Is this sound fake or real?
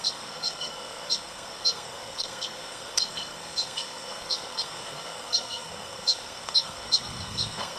fake